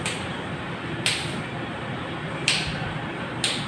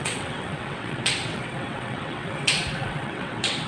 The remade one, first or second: second